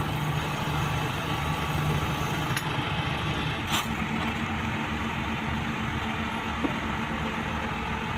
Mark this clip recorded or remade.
recorded